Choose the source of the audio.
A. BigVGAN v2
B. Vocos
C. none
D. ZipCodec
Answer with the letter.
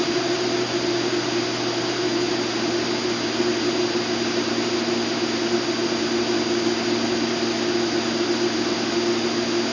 C